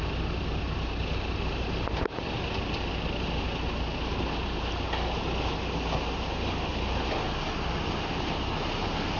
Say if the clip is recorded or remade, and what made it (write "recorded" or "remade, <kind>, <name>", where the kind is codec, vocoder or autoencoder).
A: recorded